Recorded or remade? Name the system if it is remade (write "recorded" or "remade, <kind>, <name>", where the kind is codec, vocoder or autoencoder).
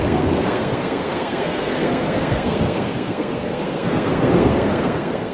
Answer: remade, codec, SNAC